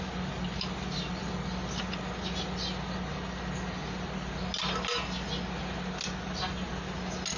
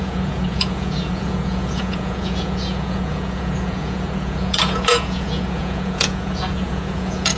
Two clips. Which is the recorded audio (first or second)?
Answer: first